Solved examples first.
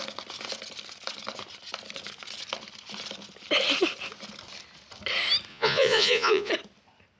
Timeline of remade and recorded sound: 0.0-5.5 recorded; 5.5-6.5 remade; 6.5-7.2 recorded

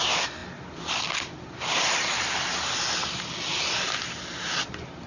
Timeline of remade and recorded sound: 0.0-5.1 recorded

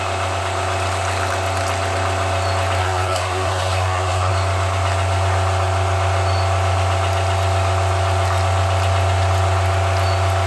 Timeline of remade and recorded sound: 0.0-2.8 recorded; 2.8-4.3 remade; 4.3-10.5 recorded

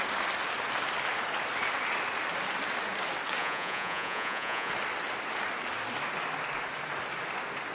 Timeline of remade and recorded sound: 0.0-3.4 recorded; 3.4-4.7 remade; 4.7-7.7 recorded